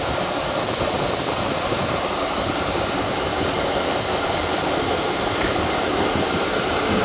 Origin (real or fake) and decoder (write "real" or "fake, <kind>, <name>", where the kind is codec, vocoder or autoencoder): real